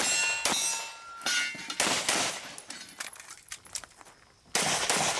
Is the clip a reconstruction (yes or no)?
no